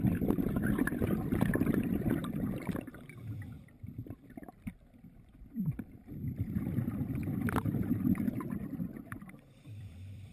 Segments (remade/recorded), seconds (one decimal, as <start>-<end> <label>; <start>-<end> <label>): 0.0-10.3 remade